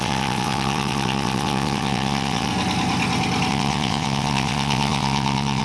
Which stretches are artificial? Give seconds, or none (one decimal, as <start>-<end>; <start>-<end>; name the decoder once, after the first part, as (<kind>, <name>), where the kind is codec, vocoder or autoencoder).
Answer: 0.0-2.5 (vocoder, WaveNeXt); 3.5-5.6